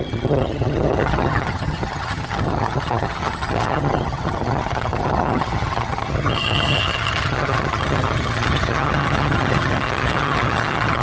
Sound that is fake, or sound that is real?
fake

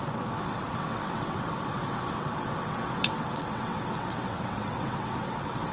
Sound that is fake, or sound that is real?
fake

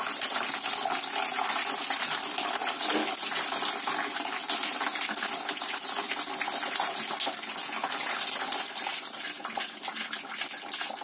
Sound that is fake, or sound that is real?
real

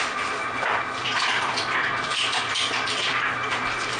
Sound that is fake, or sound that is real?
real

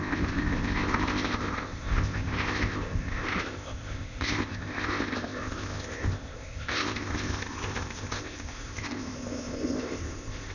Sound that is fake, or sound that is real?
fake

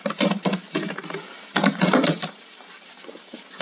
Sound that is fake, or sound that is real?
real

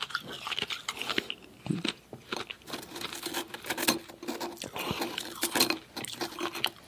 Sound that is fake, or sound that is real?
real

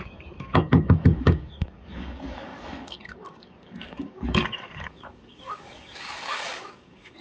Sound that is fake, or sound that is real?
fake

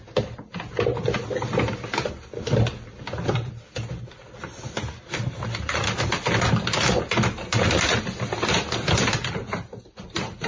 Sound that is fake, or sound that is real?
real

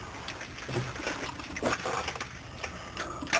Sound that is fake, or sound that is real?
real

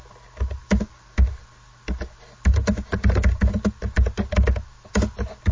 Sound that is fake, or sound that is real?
real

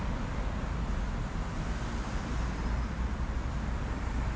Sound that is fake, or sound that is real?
real